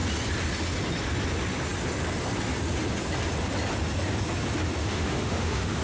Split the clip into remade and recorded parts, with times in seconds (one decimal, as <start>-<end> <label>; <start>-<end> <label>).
0.0-4.8 recorded; 4.8-5.8 remade